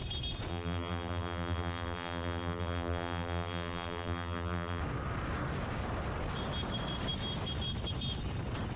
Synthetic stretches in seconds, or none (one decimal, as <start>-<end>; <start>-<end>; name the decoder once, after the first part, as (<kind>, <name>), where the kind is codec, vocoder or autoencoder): 0.5-4.8 (vocoder, BigVGAN v2)